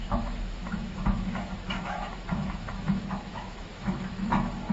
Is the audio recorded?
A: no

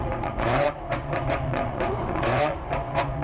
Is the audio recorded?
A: no